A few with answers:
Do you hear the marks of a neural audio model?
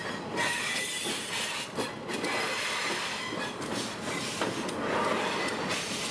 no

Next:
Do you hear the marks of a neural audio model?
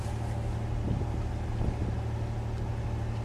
no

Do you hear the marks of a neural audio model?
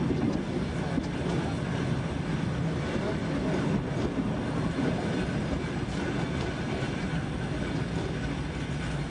no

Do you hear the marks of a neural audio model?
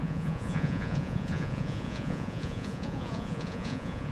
yes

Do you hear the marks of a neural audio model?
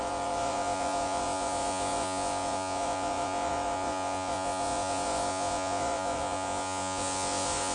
yes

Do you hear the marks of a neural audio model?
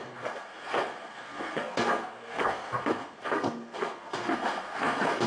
yes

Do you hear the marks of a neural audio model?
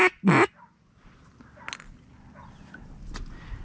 no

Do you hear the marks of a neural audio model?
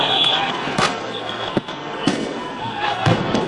yes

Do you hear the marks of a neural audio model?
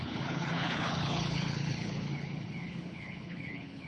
yes